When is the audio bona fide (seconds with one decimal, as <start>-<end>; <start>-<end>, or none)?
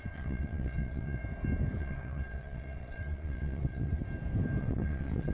1.2-1.8; 4.0-4.6